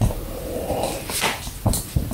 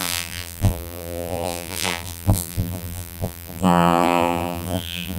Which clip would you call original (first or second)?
first